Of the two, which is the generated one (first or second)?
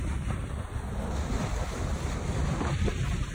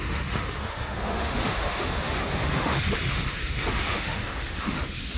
second